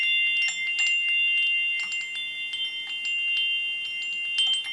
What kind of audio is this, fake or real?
real